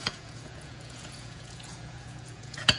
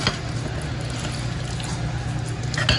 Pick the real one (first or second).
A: second